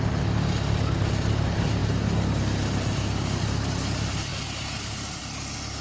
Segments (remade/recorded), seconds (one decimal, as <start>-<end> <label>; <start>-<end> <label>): 0.0-5.8 recorded